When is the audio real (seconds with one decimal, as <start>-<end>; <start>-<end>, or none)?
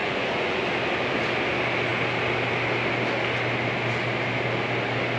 0.6-5.2